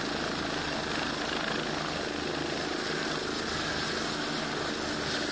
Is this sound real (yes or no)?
yes